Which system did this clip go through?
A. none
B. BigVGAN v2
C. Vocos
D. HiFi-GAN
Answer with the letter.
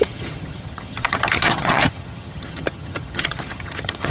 D